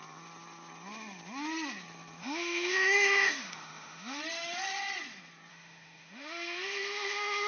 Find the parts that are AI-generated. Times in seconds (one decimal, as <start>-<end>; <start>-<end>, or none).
2.2-4.2; 5.5-7.5